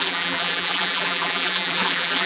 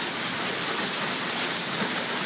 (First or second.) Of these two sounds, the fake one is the first